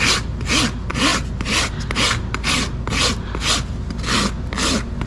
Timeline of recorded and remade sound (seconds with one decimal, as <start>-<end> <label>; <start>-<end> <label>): 0.0-5.1 recorded